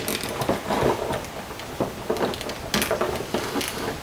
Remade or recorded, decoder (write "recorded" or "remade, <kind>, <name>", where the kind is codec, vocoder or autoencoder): recorded